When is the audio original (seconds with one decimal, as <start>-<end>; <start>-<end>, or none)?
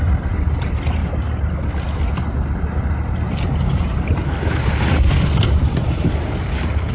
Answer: 1.0-5.1